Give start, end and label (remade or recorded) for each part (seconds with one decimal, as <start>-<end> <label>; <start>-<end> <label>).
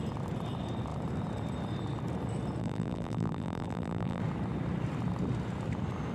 0.0-2.6 recorded; 2.6-4.2 remade; 4.2-6.1 recorded